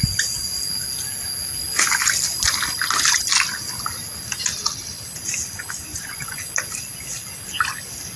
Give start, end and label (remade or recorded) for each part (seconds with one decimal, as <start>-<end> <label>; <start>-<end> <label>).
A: 0.0-5.9 recorded; 5.9-6.4 remade; 6.4-8.2 recorded